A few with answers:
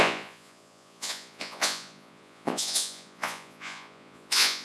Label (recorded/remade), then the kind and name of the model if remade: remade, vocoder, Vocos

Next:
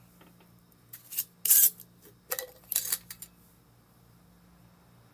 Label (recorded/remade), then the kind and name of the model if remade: recorded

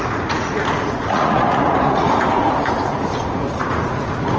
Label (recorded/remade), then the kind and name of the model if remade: remade, vocoder, Vocos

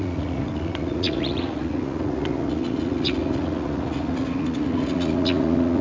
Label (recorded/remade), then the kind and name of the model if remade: remade, vocoder, Vocos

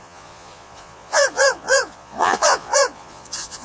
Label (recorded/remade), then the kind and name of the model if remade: remade, vocoder, Vocos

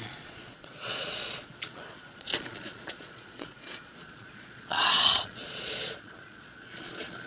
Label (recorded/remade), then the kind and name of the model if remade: remade, vocoder, Vocos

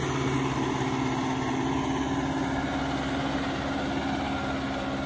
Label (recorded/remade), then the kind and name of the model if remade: recorded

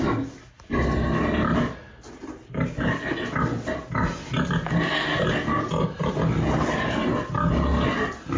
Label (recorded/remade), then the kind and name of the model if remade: recorded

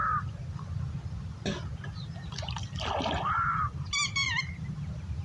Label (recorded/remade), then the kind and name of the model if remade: recorded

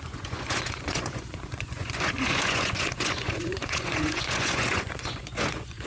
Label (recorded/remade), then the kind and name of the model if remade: remade, vocoder, Vocos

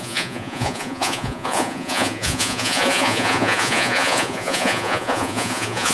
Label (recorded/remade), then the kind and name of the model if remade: remade, vocoder, Vocos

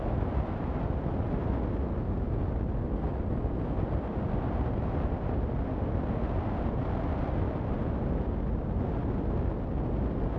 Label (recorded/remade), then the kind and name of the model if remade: recorded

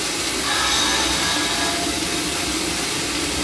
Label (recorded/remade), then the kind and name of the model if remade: recorded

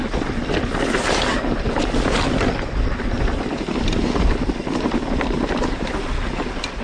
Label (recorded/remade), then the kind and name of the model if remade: recorded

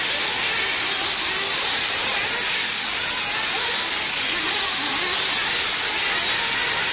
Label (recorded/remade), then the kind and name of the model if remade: recorded